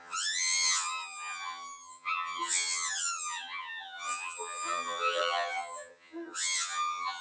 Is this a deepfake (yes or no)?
yes